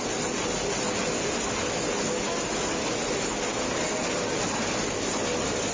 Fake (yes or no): no